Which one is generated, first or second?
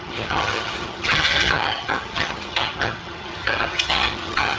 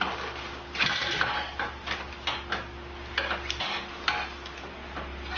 first